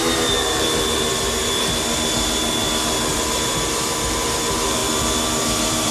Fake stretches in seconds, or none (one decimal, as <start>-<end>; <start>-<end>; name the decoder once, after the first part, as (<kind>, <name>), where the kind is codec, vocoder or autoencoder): 0.0-5.9 (vocoder, BigVGAN v2)